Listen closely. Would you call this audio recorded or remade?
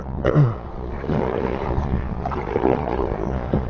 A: remade